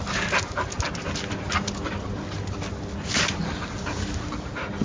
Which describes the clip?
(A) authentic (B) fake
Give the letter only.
A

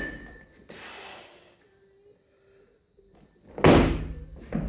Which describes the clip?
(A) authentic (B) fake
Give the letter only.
A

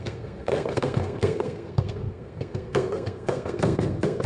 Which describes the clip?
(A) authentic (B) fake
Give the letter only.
B